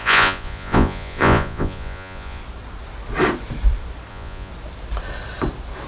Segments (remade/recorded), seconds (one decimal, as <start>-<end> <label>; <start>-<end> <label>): 0.0-2.4 remade; 2.4-4.1 recorded; 4.1-4.5 remade; 4.5-5.9 recorded